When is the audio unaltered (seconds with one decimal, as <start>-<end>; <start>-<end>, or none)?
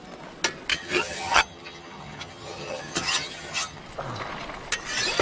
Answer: 0.0-0.7; 3.8-5.2